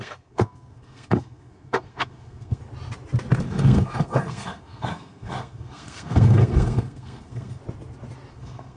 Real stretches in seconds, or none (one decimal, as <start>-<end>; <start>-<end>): 2.6-3.5; 7.6-8.3